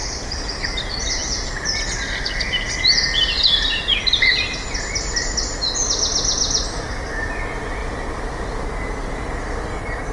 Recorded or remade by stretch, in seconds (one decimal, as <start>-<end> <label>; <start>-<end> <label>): 0.0-0.5 remade; 0.5-5.8 recorded; 5.8-6.6 remade; 6.6-7.8 recorded; 7.8-8.6 remade; 8.6-10.1 recorded